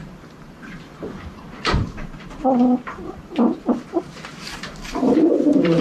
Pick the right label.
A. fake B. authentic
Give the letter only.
A